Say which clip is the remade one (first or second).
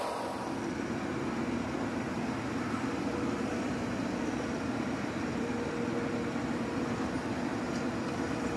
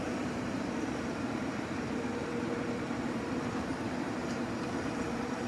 second